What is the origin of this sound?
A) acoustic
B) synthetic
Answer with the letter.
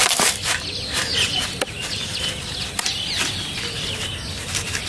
A